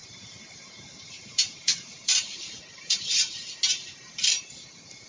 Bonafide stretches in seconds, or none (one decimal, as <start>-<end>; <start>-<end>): 3.1-3.7